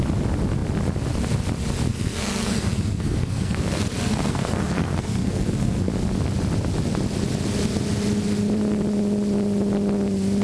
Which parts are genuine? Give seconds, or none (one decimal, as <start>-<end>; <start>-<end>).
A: 0.0-1.9; 5.9-10.4